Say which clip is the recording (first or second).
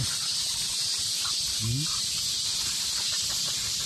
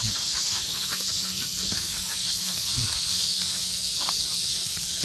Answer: first